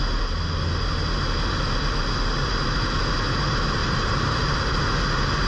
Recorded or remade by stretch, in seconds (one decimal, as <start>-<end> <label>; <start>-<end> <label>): 0.0-3.8 recorded; 3.8-4.8 remade; 4.8-5.5 recorded